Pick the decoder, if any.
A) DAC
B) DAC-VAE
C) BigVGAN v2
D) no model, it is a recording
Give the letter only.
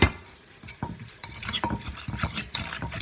C